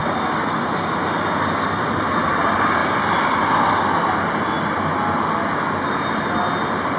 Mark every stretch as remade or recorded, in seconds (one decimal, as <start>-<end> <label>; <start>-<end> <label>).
0.0-7.0 recorded

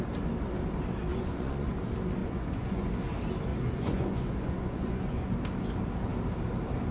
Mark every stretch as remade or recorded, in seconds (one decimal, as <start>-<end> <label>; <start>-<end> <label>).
0.0-1.1 recorded; 1.1-1.8 remade; 1.8-2.2 recorded; 2.2-2.9 remade; 2.9-3.5 recorded; 3.5-5.3 remade; 5.3-6.9 recorded

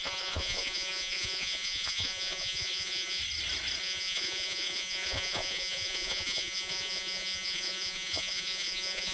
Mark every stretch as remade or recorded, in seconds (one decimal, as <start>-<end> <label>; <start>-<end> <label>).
0.0-3.2 remade; 3.2-3.8 recorded; 3.8-9.1 remade

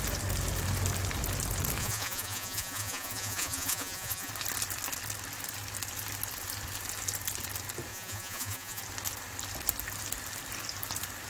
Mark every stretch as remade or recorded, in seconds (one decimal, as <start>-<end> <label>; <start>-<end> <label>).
0.0-1.8 recorded; 1.8-4.3 remade; 4.3-7.9 recorded; 7.9-8.8 remade; 8.8-11.3 recorded